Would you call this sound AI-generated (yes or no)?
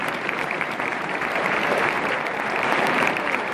yes